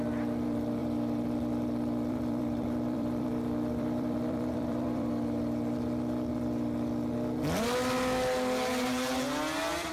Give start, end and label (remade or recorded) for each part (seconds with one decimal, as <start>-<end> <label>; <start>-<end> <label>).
0.0-0.8 recorded; 0.8-5.1 remade; 5.1-9.9 recorded